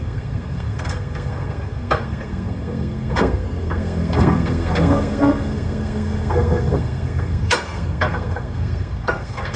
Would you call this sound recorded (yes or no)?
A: no